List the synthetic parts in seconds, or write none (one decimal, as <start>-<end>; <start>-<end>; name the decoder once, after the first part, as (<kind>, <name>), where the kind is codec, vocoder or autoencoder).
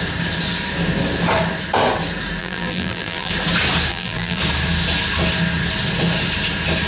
2.4-3.3 (vocoder, BigVGAN v2); 3.9-4.4